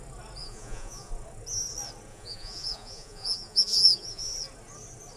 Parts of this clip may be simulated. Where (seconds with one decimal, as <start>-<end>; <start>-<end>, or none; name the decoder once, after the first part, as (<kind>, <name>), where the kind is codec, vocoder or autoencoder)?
0.4-1.1 (vocoder, Vocos); 2.1-4.3